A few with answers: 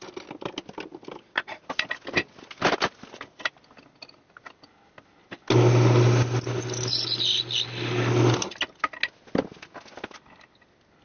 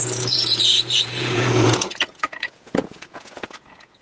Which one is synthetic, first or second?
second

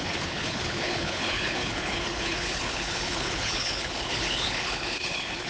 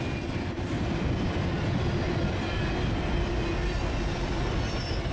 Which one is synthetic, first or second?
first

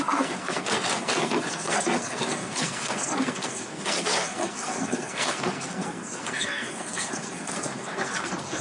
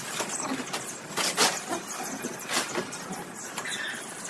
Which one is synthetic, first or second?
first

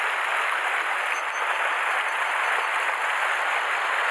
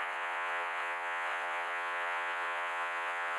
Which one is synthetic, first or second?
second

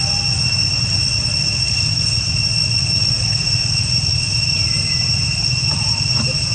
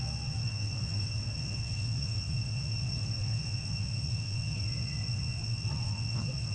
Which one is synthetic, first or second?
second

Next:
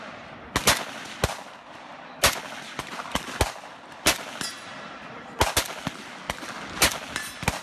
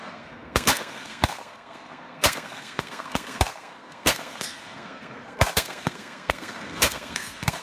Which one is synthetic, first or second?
second